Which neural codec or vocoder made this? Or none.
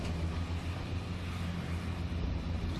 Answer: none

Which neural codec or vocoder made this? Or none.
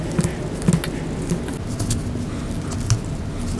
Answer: none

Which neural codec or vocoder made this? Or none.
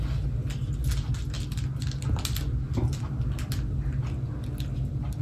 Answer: none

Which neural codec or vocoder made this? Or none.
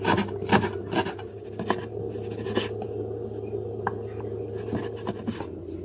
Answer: none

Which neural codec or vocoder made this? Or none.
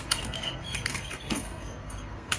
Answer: codec, SNAC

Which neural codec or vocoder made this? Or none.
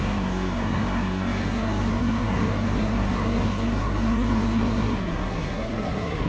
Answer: codec, SNAC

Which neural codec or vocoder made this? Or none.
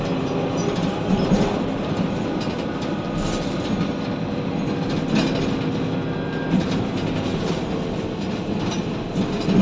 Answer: none